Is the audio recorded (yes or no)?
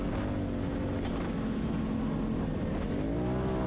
yes